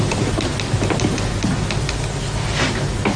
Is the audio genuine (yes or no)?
yes